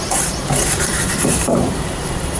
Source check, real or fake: fake